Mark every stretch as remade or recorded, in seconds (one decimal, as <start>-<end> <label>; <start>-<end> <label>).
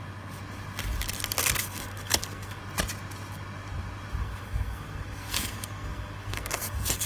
0.0-1.4 recorded; 1.4-2.6 remade; 2.6-4.2 recorded; 4.2-7.1 remade